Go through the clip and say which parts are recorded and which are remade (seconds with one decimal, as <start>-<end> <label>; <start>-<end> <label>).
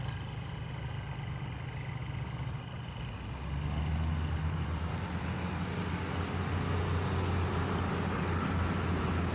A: 0.0-9.3 recorded